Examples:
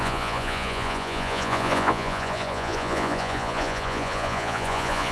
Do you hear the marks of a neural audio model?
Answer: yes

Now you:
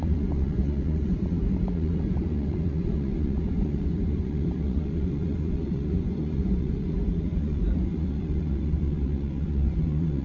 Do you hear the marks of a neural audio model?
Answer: yes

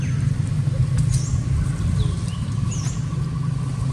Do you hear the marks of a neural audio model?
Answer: no